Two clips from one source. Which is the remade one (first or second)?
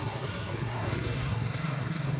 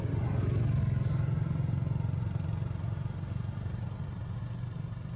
first